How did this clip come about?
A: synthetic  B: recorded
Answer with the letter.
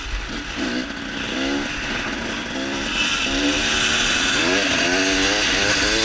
B